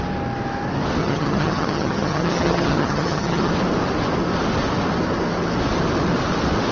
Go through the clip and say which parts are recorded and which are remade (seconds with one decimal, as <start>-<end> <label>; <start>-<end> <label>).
0.0-1.0 recorded; 1.0-3.5 remade; 3.5-6.7 recorded